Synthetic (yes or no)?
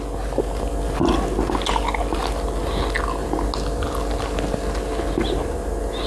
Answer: no